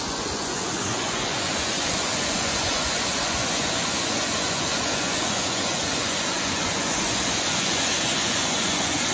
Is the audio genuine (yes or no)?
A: no